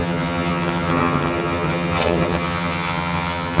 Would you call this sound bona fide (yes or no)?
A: no